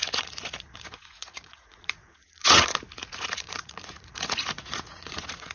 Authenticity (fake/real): fake